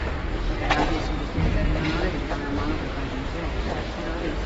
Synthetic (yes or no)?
no